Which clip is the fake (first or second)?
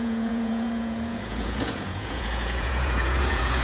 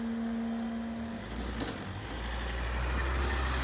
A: first